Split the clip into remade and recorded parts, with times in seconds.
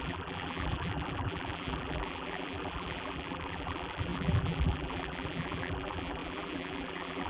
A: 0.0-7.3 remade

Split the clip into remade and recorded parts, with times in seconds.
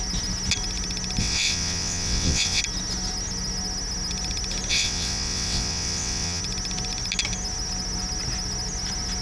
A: 0.0-1.2 recorded; 1.2-2.6 remade; 2.6-4.7 recorded; 4.7-6.4 remade; 6.4-9.2 recorded